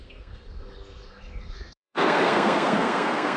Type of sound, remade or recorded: remade